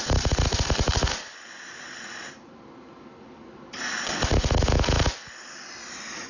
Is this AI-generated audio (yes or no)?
no